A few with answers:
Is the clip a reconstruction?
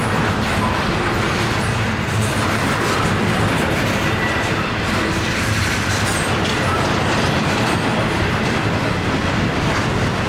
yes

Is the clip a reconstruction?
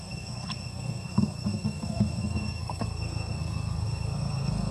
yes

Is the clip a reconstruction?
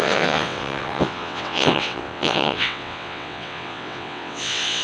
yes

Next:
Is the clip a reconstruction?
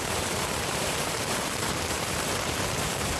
yes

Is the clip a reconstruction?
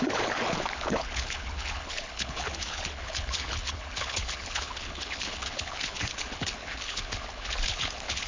yes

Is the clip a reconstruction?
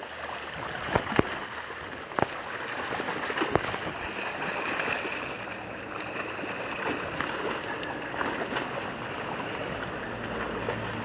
no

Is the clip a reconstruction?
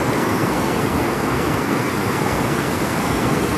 yes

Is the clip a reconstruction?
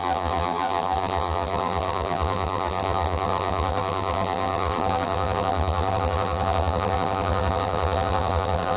yes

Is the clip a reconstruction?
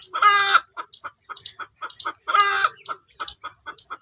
no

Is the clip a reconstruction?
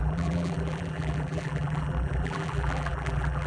yes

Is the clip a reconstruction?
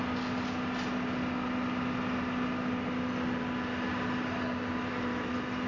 no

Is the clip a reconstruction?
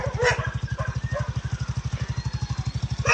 no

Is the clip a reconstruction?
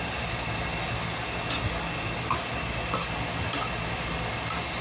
no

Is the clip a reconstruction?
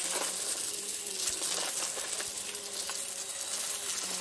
no